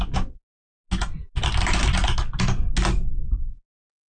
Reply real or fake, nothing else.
real